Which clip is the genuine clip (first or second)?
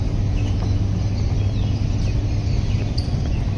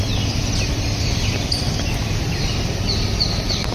first